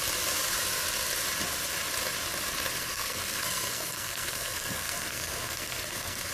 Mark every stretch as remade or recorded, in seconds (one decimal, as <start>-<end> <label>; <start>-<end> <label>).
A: 0.0-2.8 recorded; 2.8-6.3 remade